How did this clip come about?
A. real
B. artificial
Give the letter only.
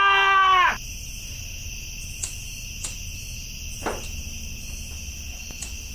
A